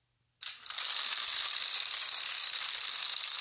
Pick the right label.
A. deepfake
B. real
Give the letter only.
B